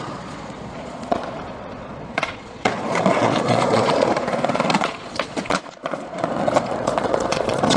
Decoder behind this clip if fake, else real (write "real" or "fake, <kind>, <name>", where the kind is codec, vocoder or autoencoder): fake, vocoder, Vocos